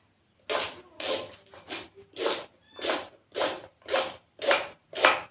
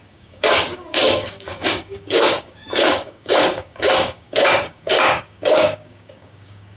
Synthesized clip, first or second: second